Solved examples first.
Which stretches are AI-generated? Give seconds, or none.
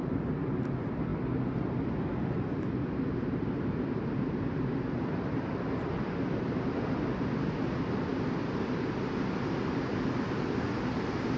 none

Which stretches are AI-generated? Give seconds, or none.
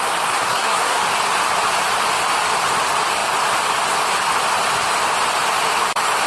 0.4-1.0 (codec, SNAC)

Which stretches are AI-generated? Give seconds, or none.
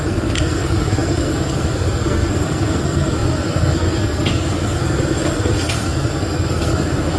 0.0-7.2 (codec, SNAC)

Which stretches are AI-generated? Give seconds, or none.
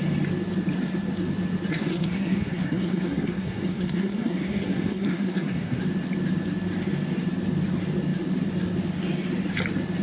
1.7-5.8 (codec, SNAC)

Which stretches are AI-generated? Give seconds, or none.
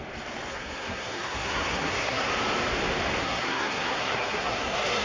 0.5-2.3 (codec, SNAC); 3.2-5.0